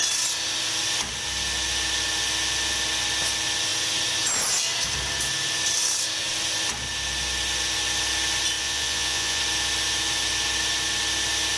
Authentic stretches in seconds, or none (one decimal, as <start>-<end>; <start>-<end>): 0.0-8.6; 9.4-11.6